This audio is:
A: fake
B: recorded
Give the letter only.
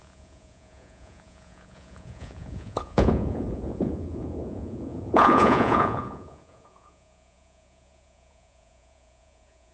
A